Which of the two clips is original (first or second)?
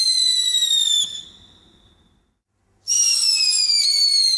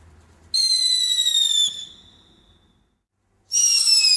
second